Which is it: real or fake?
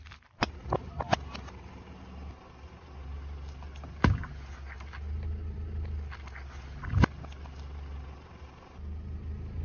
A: real